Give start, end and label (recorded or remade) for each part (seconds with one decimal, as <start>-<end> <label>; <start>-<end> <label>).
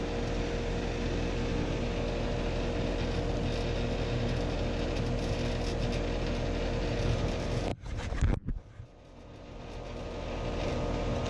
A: 0.0-7.7 recorded; 7.7-9.6 remade; 9.6-11.3 recorded